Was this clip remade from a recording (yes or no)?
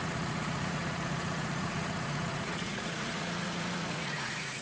yes